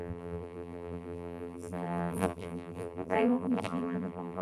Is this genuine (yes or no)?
no